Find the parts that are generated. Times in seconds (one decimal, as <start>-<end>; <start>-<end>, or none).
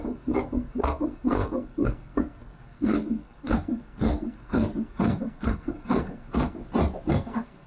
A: 0.0-6.6; 7.1-7.7